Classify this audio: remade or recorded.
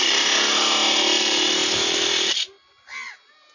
recorded